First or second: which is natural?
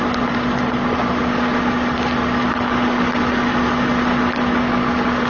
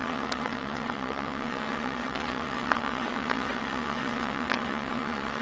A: first